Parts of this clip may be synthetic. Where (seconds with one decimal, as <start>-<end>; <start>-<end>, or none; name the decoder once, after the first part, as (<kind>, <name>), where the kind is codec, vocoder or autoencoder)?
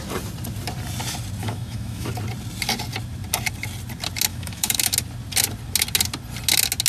1.4-2.1 (autoencoder, DAC-VAE); 4.3-4.9